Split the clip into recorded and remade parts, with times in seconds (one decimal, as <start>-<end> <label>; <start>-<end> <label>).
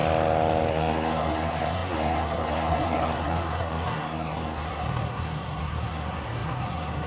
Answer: 0.0-0.7 recorded; 0.7-7.1 remade